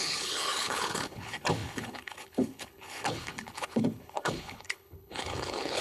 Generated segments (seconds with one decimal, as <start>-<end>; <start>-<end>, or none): 0.0-5.8